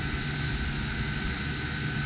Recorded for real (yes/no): yes